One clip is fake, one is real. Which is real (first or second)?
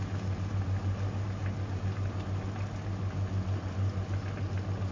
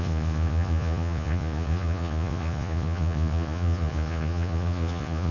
first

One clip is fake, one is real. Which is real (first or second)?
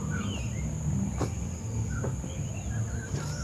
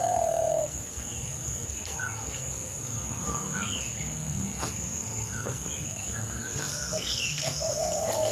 first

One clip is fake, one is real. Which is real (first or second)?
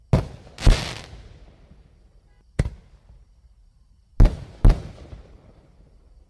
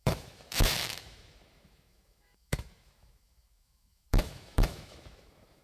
first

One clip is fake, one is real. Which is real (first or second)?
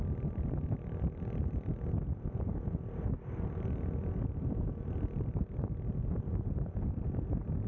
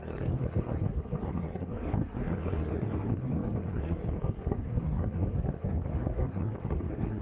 first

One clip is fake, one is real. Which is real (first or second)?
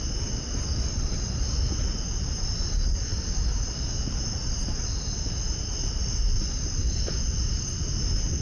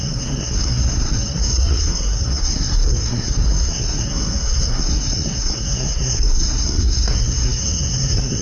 first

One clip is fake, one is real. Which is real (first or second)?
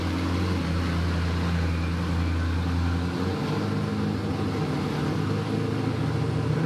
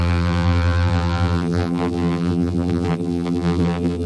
first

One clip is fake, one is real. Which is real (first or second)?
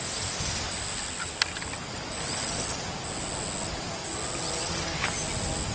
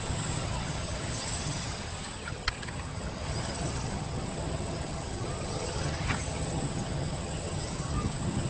first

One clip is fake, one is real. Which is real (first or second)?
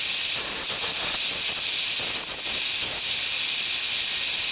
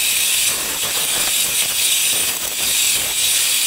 first